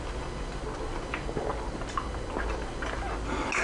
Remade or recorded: recorded